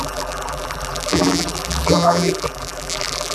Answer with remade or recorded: remade